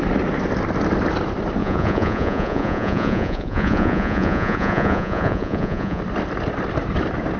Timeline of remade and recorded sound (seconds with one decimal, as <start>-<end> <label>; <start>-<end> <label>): 0.0-1.6 recorded; 1.6-6.0 remade; 6.0-7.4 recorded